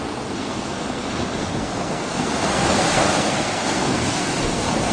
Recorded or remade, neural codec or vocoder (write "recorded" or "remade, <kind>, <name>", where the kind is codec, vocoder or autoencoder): remade, codec, SNAC